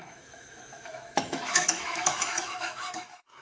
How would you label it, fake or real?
fake